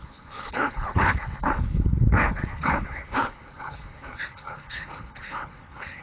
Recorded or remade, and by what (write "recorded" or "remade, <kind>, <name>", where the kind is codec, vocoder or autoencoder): remade, codec, HILCodec